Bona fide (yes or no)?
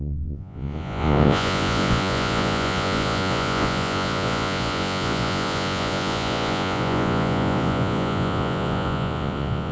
no